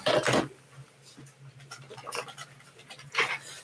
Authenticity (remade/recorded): recorded